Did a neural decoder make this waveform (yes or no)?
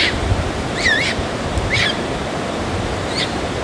yes